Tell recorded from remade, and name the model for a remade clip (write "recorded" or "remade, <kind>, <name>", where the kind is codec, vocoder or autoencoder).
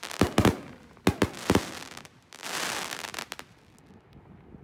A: recorded